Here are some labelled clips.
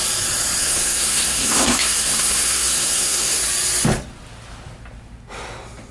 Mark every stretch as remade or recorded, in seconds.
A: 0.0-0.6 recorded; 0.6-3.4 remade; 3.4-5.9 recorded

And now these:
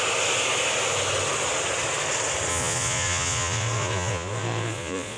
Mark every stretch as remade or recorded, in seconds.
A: 0.0-2.5 recorded; 2.5-5.2 remade

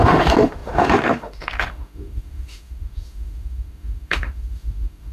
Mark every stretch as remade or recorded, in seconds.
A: 0.0-5.1 remade

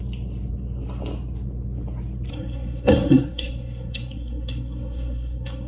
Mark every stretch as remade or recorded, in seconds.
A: 0.0-2.3 recorded; 2.3-5.7 remade

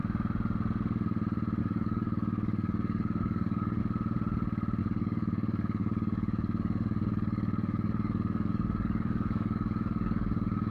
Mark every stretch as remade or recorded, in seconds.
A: 0.0-1.6 recorded; 1.6-3.8 remade; 3.8-4.8 recorded; 4.8-10.7 remade

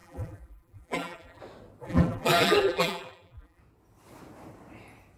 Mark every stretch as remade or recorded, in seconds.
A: 0.0-1.4 remade; 1.4-1.8 recorded; 1.8-3.6 remade; 3.6-5.2 recorded

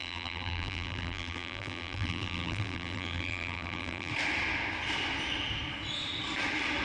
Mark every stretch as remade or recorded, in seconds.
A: 0.0-4.1 remade; 4.1-6.8 recorded

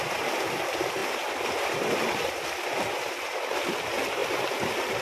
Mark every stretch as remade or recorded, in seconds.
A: 0.0-5.0 recorded